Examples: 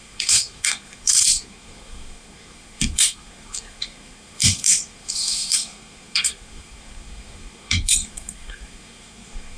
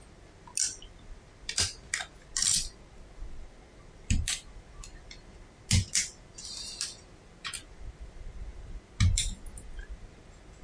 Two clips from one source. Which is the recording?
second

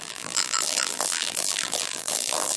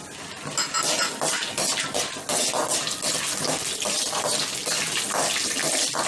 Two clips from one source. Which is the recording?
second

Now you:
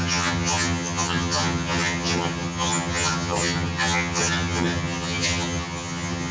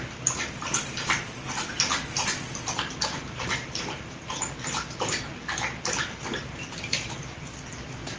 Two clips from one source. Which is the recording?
second